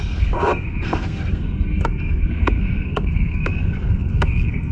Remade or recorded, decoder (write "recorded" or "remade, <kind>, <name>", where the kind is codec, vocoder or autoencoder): remade, codec, SNAC